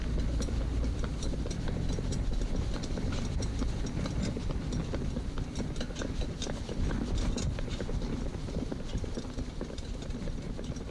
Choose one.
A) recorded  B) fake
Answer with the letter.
A